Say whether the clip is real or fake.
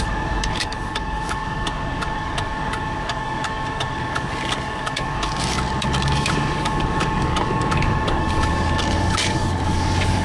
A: fake